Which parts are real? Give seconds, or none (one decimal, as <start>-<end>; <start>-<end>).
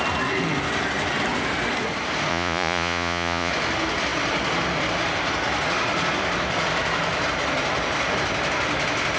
0.0-2.3; 3.5-9.2